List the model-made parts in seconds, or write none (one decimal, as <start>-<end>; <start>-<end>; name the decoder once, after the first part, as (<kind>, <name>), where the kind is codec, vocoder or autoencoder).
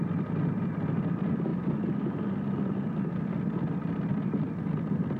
none